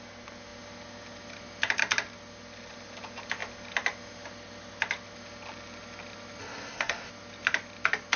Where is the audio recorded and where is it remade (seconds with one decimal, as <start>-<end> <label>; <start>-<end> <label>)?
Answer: 0.0-6.4 recorded; 6.4-7.1 remade; 7.1-8.2 recorded